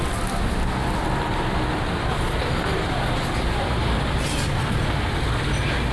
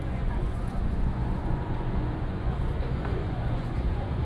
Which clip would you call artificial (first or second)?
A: second